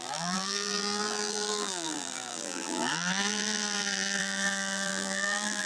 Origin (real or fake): fake